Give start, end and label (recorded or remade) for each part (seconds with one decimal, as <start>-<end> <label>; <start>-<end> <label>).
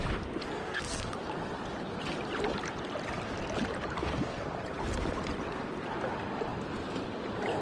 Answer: 0.0-0.6 recorded; 0.6-1.1 remade; 1.1-4.0 recorded; 4.0-4.5 remade; 4.5-7.6 recorded